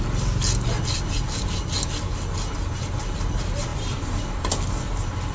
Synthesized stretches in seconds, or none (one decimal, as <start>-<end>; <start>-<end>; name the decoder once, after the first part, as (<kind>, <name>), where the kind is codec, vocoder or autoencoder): 3.7-4.5 (vocoder, BigVGAN v2)